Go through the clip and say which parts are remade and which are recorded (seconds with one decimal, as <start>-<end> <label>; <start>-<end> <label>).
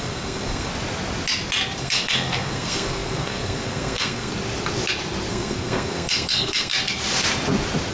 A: 0.0-0.7 remade; 0.7-1.8 recorded; 1.8-4.3 remade; 4.3-5.3 recorded; 5.3-6.7 remade; 6.7-7.9 recorded